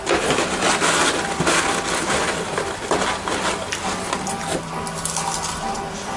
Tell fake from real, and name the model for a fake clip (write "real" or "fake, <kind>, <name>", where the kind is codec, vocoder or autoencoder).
real